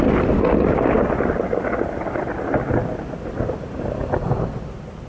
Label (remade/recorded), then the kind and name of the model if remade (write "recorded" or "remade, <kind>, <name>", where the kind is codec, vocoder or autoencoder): recorded